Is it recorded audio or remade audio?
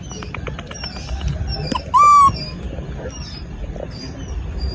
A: recorded